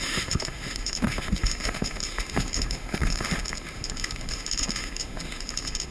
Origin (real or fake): fake